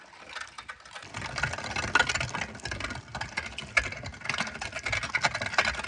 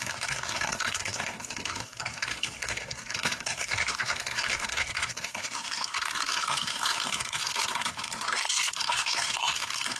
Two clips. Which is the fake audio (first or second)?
second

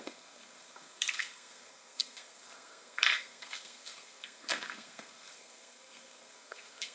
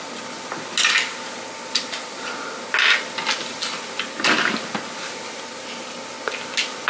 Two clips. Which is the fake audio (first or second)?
first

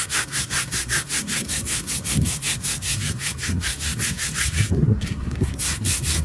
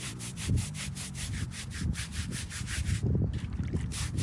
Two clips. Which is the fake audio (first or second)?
first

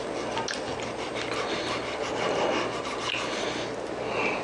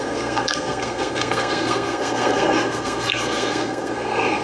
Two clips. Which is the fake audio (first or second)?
second